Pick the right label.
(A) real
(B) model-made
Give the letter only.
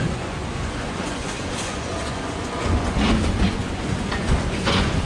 B